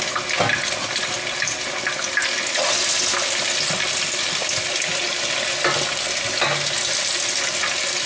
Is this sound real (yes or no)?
yes